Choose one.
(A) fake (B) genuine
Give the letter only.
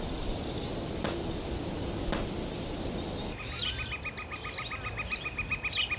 B